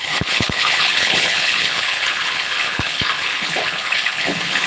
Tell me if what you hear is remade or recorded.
remade